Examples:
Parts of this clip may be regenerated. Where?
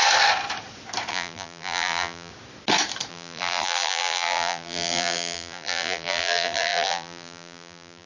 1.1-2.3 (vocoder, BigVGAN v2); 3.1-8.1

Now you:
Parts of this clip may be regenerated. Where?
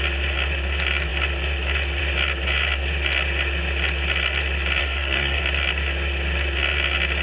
4.8-5.4 (codec, SNAC)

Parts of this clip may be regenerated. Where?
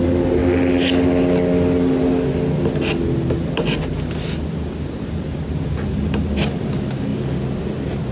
0.0-0.4 (vocoder, BigVGAN v2); 4.8-7.1